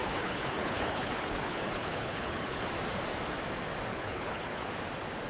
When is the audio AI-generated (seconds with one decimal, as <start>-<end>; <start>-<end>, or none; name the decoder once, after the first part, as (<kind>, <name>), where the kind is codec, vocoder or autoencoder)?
0.0-2.7 (codec, HILCodec); 3.9-4.7